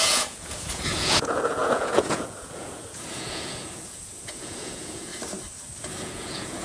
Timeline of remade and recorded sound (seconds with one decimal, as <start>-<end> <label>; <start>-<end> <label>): 0.0-5.1 remade; 5.1-6.0 recorded; 6.0-6.6 remade